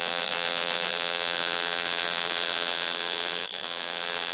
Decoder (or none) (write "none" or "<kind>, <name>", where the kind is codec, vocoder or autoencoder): vocoder, BigVGAN v2